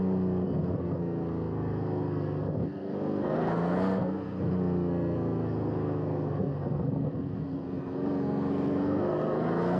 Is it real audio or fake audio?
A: fake